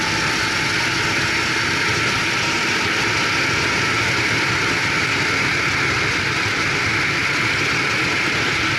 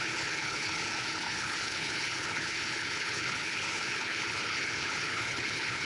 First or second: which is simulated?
second